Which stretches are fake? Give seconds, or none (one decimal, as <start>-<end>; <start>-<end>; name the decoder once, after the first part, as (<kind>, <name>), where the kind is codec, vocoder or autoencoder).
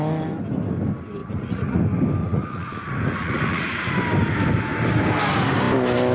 1.2-1.8 (vocoder, Vocos); 2.2-3.9